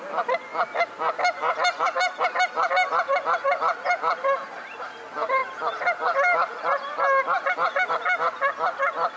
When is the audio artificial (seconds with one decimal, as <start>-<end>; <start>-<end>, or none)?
none